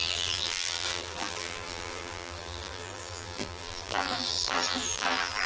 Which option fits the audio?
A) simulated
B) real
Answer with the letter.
A